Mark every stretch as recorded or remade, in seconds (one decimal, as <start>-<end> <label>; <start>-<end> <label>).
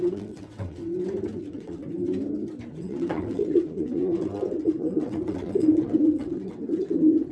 0.0-0.8 remade; 0.8-1.4 recorded; 1.4-1.8 remade; 1.8-2.7 recorded; 2.7-7.3 remade